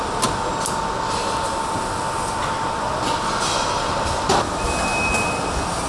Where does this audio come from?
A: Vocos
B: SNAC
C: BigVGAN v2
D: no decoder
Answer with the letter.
D